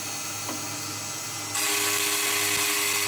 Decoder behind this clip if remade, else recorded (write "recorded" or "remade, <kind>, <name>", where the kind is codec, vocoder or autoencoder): recorded